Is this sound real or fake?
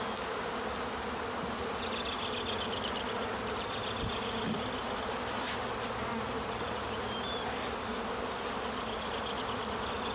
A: real